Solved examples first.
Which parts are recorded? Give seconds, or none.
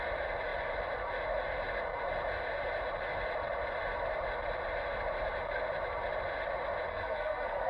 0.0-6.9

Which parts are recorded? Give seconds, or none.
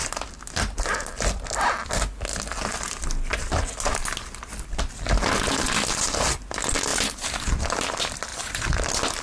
0.0-4.8; 6.9-7.6; 8.3-9.2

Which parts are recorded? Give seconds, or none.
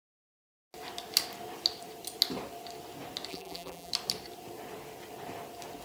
0.0-3.3; 3.9-5.8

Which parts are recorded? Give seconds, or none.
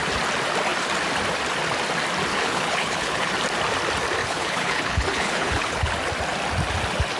0.0-2.3; 3.3-4.2; 5.9-7.2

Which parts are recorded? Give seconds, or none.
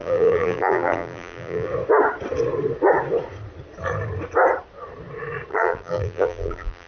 1.7-5.5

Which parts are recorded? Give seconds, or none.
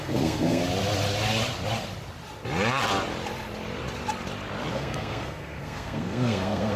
0.6-4.7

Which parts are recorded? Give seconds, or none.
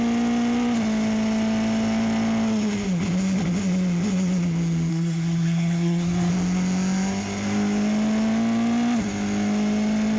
0.0-4.9; 6.3-10.2